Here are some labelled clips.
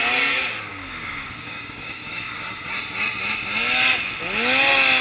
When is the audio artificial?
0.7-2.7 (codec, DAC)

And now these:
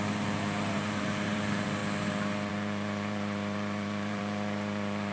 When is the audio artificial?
0.0-1.8 (vocoder, BigVGAN v2); 2.5-5.1

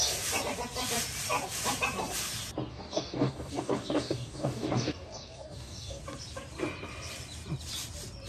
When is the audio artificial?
2.7-6.0 (codec, DAC)

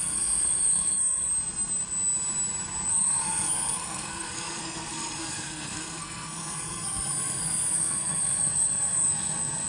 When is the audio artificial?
0.0-1.3 (codec, SNAC); 2.9-9.7

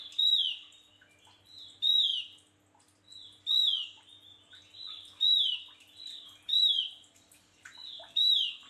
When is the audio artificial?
0.0-2.1 (vocoder, BigVGAN v2); 4.6-8.7

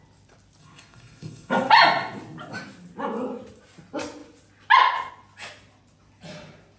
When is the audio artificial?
0.6-1.7 (codec, SNAC)

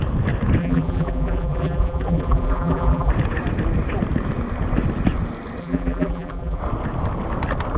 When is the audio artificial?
0.6-3.1 (vocoder, BigVGAN v2); 5.6-6.6